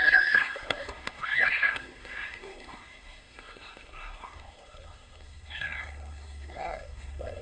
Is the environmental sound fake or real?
fake